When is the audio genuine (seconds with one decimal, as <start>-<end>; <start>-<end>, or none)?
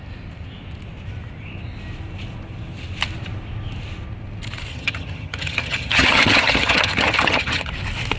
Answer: 0.0-4.7; 7.7-8.2